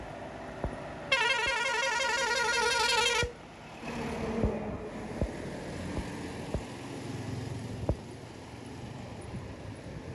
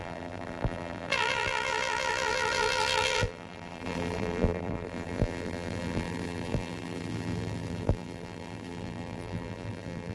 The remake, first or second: second